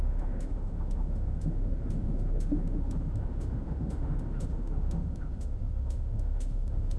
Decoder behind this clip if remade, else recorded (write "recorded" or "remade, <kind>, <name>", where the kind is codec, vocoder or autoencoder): remade, autoencoder, DAC-VAE